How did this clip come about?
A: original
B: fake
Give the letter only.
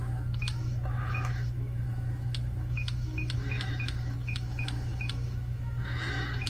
B